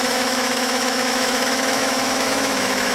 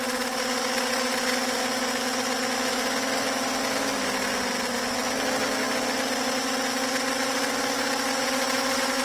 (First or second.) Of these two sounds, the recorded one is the second